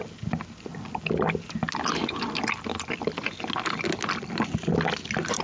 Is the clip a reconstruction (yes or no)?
no